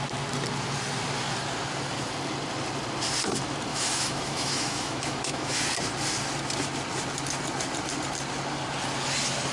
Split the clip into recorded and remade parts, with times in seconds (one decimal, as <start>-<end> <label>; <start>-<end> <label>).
0.0-3.7 recorded; 3.7-5.6 remade; 5.6-9.5 recorded